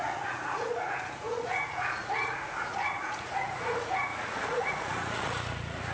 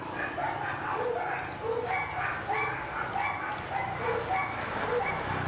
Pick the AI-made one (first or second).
first